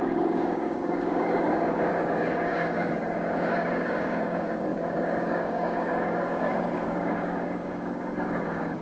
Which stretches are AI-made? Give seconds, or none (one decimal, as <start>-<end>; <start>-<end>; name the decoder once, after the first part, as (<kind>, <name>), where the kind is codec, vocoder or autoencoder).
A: 0.0-8.8 (codec, DAC)

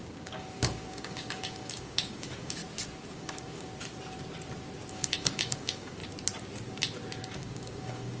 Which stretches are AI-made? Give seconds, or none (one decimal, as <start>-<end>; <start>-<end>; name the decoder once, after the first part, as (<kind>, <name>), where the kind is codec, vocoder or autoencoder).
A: 0.0-2.6 (codec, DAC); 3.1-3.7; 4.9-6.0; 7.2-8.2

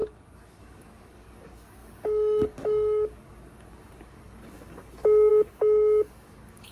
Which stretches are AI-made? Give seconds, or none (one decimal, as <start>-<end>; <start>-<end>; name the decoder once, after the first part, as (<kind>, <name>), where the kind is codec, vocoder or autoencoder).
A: 0.0-6.7 (codec, DAC)

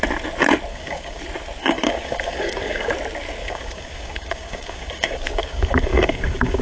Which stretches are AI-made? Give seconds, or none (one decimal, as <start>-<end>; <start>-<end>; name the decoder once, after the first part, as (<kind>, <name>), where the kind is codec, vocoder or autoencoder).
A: 0.7-1.2 (codec, DAC); 1.6-2.9; 3.4-6.6